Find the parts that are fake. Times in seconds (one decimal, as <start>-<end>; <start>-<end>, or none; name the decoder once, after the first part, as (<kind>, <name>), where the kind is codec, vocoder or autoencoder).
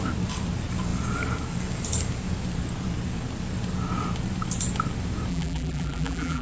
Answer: 5.3-6.4 (vocoder, BigVGAN v2)